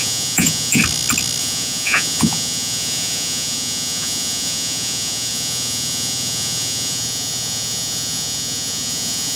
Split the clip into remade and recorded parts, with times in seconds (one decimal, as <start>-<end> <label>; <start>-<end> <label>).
0.0-0.8 remade; 0.8-1.4 recorded; 1.4-9.4 remade